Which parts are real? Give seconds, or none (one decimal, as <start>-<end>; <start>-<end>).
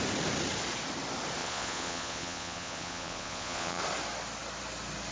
0.0-1.4; 3.8-5.1